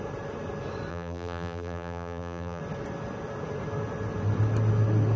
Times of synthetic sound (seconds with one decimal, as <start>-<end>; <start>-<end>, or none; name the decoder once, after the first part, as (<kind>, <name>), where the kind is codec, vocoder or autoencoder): 0.9-2.6 (vocoder, BigVGAN v2)